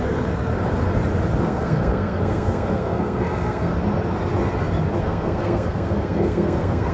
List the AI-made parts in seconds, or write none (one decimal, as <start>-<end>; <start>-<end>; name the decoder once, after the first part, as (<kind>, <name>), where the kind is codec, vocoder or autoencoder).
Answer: 0.0-0.5 (codec, SNAC); 1.4-3.7; 5.0-6.9